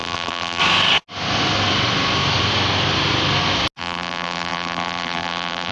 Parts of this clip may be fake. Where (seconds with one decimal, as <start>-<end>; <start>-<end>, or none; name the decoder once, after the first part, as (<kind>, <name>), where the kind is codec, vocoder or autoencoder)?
0.0-0.6 (vocoder, BigVGAN v2); 3.8-5.7